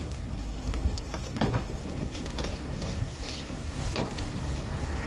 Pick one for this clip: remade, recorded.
remade